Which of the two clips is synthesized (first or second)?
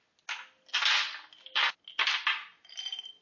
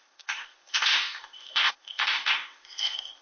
second